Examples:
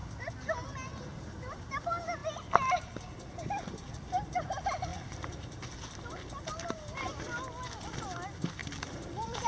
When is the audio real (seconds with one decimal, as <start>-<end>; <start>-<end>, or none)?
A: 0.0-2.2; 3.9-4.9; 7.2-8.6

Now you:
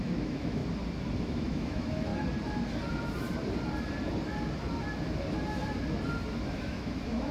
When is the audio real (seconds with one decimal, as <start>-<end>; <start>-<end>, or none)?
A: 0.6-1.2; 2.1-6.5

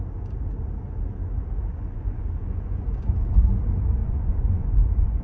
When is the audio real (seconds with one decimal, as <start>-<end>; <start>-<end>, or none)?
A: 0.0-1.7; 2.9-4.0